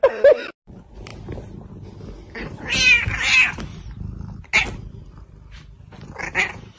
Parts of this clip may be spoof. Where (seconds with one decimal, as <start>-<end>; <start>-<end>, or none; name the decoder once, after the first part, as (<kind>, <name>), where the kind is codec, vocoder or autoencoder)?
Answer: none